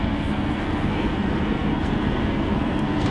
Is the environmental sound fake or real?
fake